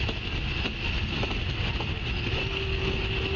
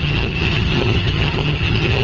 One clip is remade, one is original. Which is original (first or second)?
first